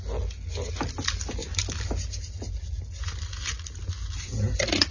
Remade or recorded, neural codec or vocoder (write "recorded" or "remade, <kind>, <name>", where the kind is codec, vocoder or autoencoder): recorded